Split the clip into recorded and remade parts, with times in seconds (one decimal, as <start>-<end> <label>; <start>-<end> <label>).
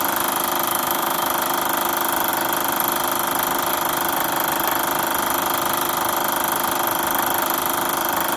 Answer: 0.0-0.7 recorded; 0.7-1.3 remade; 1.3-8.4 recorded